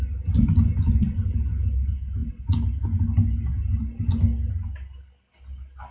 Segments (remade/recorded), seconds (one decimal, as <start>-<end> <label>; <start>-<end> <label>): 0.0-5.9 recorded